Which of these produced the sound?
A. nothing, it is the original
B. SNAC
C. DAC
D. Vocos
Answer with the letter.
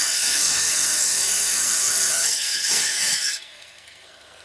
B